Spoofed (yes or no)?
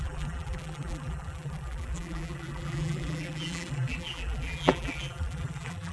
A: yes